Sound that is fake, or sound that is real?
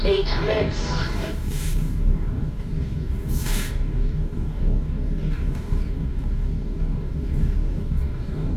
fake